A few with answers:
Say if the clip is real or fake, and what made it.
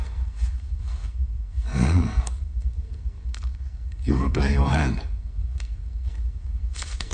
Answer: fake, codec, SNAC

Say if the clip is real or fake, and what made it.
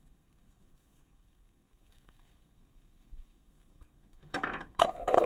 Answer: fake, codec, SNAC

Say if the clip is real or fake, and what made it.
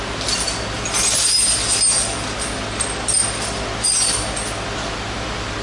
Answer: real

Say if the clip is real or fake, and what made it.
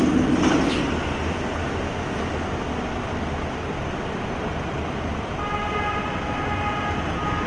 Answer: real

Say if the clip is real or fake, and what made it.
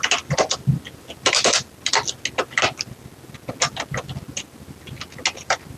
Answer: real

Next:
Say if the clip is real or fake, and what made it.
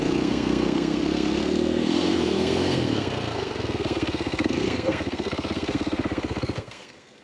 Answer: fake, codec, SNAC